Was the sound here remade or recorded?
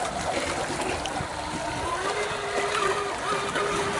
recorded